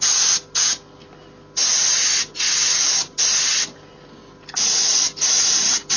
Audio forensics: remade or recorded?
recorded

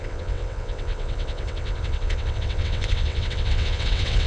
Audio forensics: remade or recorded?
remade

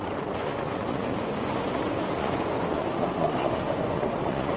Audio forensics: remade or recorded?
remade